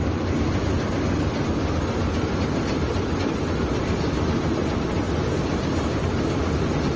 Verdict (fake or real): real